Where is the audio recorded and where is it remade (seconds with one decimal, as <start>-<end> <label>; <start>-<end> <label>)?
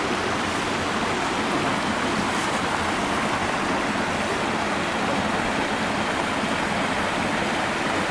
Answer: 0.0-8.1 recorded